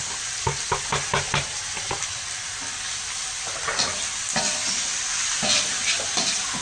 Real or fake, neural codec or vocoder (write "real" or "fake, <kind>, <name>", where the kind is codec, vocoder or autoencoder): fake, vocoder, BigVGAN v2